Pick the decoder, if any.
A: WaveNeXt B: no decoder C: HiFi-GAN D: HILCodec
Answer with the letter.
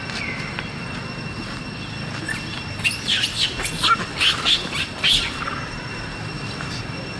B